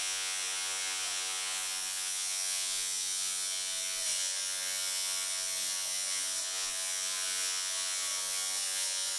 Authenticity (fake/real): fake